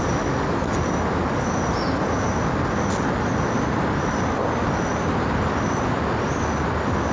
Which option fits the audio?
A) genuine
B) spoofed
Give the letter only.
A